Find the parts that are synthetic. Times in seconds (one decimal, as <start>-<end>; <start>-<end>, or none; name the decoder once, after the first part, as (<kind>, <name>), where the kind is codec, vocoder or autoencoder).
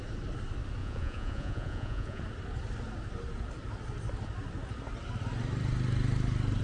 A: 0.8-2.2 (vocoder, Vocos)